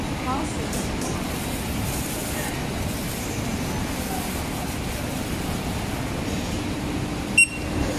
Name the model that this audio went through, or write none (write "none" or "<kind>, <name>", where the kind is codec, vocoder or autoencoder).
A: none